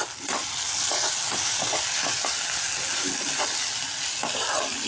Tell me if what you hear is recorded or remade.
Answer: recorded